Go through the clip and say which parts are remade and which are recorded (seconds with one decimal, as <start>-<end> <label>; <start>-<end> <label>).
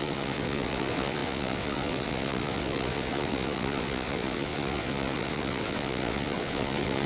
0.0-7.1 remade